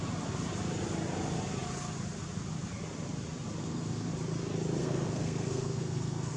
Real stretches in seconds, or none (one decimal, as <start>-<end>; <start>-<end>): 0.0-3.6; 4.1-4.8